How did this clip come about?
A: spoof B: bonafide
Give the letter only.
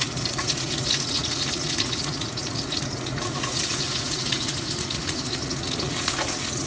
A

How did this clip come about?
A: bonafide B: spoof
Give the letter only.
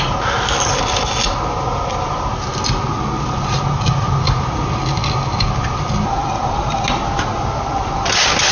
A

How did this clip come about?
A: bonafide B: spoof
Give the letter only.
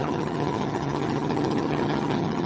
B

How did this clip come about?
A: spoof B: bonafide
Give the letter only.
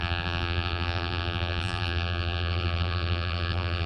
A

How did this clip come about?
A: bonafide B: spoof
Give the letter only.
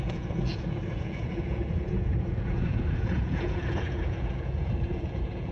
B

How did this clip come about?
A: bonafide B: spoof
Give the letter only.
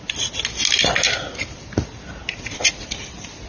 A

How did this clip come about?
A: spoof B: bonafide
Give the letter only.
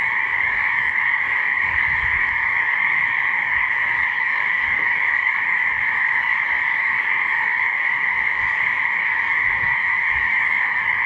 A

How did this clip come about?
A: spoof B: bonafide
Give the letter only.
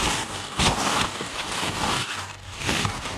A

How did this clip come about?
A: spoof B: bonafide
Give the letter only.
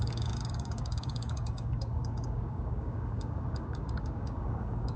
A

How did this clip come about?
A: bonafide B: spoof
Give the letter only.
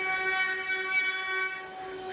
A